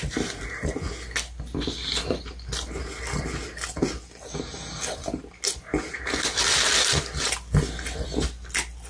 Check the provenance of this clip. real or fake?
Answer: real